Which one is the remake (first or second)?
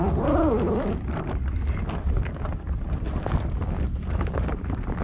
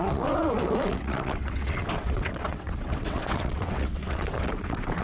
second